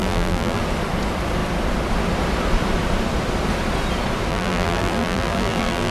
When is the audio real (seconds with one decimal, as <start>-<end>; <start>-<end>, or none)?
0.6-4.3